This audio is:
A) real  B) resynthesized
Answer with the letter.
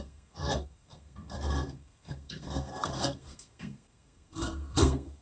B